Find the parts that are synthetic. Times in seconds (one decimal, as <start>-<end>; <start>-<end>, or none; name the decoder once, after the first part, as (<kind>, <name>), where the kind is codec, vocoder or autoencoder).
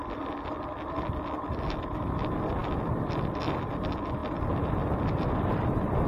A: none